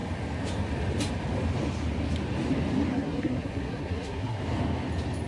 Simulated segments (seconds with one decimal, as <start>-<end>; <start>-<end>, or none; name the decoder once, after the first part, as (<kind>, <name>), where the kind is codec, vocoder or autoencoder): 2.9-4.4 (codec, SNAC)